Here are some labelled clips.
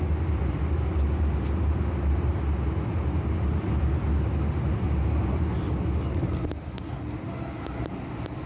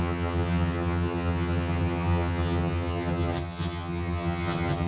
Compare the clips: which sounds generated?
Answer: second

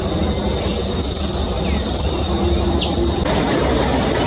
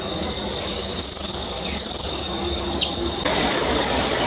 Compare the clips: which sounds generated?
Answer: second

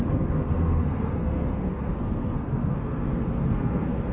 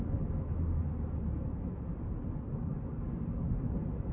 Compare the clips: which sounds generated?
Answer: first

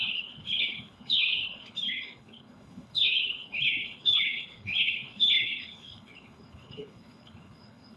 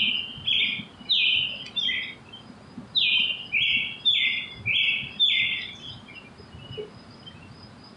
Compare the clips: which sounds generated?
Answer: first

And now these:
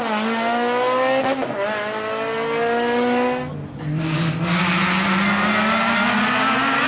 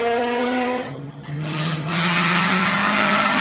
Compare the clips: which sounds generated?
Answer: second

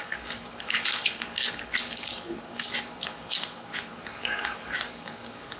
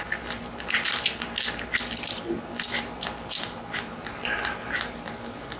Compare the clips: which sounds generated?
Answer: first